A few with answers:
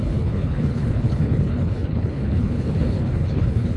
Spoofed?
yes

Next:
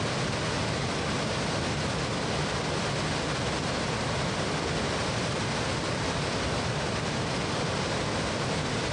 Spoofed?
no